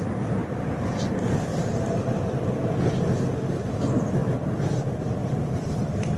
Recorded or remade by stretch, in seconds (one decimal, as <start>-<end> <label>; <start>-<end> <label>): 0.0-0.4 recorded; 0.4-1.0 remade; 1.0-1.5 recorded; 1.5-2.5 remade; 2.5-5.2 recorded; 5.2-6.2 remade